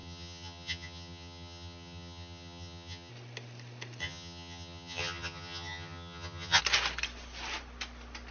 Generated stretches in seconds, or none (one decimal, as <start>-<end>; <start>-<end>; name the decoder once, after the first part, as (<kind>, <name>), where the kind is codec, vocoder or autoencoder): 0.0-3.1 (vocoder, HiFi-GAN); 4.0-6.6